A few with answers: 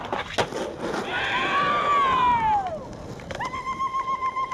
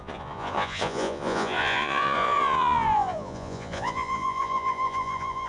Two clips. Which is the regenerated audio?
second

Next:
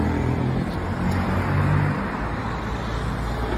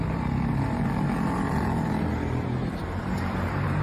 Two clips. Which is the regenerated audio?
second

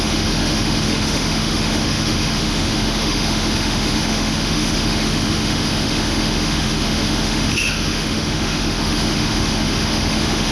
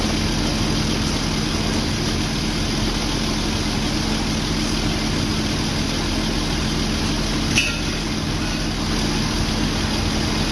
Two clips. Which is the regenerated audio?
first